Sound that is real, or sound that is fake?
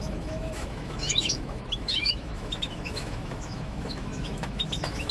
fake